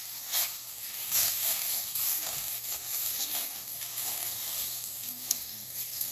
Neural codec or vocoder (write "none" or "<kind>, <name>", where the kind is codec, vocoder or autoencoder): codec, DAC